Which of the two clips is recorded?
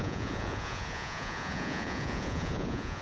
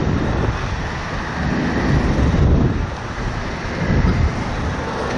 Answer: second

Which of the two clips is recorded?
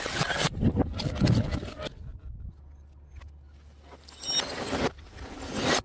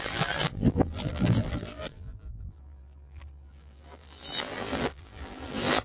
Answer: first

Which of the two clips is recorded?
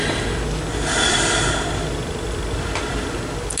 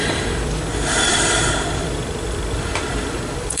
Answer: first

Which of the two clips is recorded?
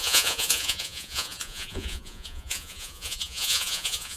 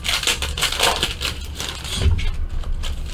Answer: second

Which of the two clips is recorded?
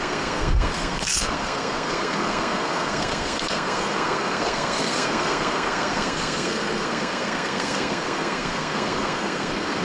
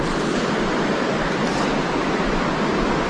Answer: second